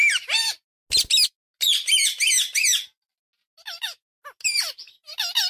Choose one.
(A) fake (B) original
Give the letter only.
B